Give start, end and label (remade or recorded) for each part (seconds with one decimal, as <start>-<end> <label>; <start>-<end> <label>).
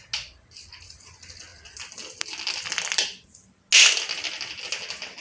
0.0-5.2 recorded